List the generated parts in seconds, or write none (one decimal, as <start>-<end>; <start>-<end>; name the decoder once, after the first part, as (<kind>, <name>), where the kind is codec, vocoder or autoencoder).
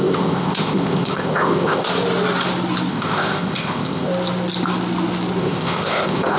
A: 0.0-1.9 (codec, ZipCodec); 2.9-4.1; 5.4-6.4